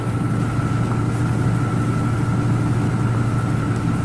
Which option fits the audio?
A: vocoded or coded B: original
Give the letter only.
B